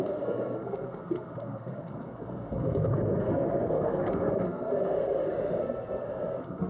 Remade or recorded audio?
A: remade